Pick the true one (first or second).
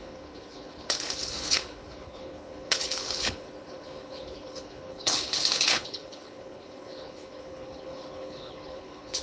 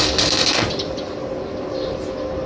second